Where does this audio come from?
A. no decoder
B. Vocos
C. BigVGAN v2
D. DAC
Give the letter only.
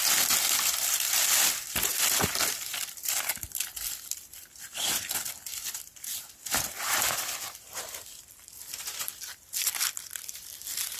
C